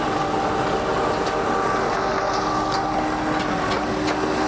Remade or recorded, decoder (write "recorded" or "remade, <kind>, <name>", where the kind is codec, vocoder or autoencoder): recorded